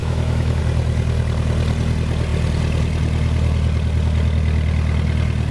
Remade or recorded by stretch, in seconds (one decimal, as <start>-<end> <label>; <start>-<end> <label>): 0.0-0.6 remade; 0.6-5.5 recorded